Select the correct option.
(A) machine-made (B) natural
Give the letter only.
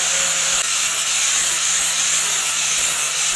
B